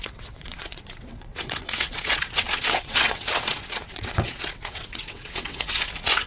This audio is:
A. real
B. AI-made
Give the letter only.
B